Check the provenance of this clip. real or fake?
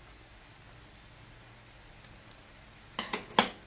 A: real